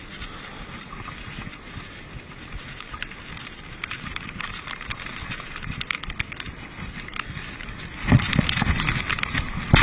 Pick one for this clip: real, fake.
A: real